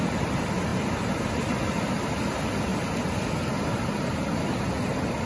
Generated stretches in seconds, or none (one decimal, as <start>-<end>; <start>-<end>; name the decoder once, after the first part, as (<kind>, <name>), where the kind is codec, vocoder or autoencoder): none